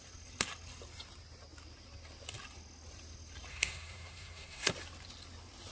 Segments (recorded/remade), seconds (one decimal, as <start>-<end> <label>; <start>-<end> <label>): 0.0-3.5 recorded; 3.5-4.7 remade; 4.7-5.7 recorded